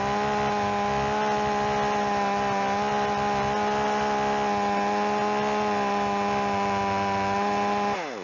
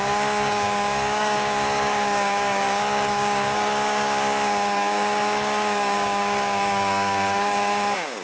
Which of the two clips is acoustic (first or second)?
first